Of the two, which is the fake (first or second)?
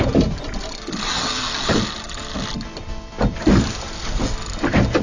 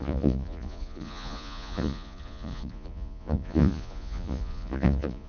second